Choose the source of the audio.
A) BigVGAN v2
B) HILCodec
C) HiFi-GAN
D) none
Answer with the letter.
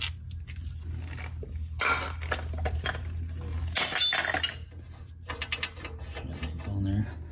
D